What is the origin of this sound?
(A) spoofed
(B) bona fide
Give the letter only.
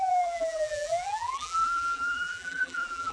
A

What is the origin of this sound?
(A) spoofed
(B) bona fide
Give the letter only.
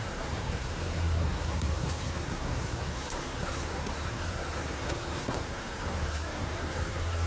A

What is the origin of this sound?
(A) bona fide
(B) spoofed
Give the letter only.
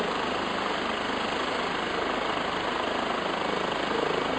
A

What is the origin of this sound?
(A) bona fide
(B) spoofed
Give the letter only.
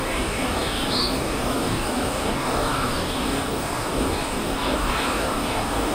B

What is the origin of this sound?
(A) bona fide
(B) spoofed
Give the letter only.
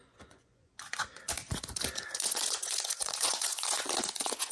B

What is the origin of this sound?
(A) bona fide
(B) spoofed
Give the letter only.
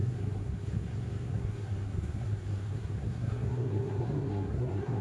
B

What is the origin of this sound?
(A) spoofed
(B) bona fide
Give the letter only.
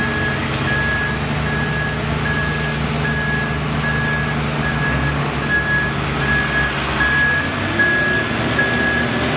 B